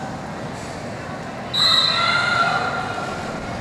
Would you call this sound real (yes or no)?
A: yes